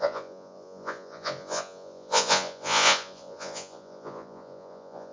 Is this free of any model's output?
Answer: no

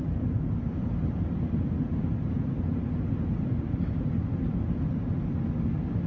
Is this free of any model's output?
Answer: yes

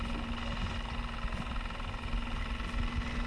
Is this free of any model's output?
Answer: yes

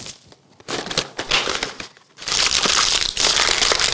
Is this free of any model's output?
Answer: yes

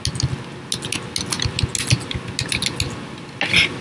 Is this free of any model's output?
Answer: yes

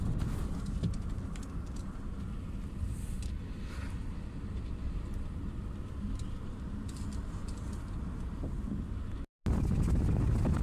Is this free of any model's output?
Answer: yes